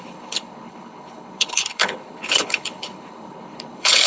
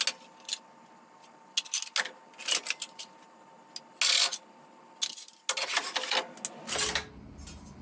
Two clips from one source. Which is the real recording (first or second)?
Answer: second